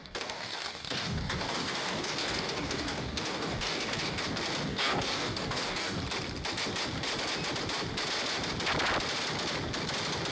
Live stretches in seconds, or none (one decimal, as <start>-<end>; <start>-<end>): 4.2-4.7; 6.0-10.3